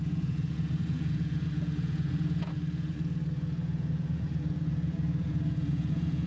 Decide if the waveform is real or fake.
fake